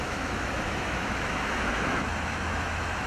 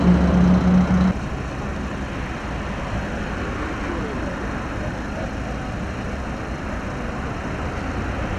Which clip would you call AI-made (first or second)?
first